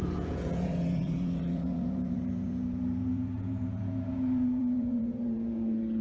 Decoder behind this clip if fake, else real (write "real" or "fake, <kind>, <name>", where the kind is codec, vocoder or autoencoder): fake, vocoder, Vocos